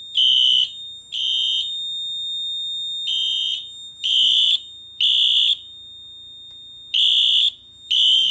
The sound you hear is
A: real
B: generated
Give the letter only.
A